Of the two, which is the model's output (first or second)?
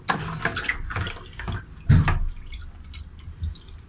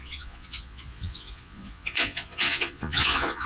second